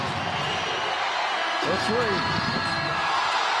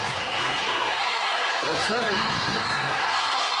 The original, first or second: first